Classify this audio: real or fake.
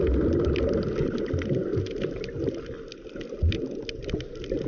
real